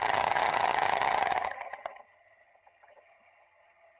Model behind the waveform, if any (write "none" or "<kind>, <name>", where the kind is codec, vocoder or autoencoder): vocoder, HiFi-GAN